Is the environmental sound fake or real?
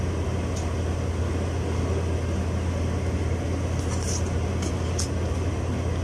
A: real